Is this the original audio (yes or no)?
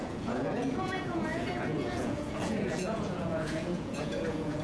no